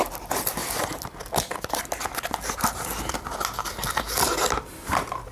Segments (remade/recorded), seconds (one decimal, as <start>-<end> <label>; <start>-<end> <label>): 0.0-5.3 recorded